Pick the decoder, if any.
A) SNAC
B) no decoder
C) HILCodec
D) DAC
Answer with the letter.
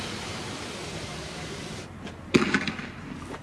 B